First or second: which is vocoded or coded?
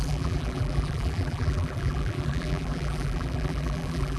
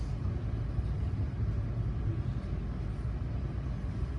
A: first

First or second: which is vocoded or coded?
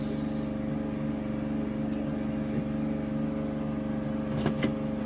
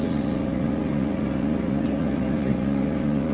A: second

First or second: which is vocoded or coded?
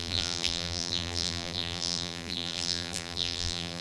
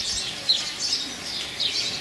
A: first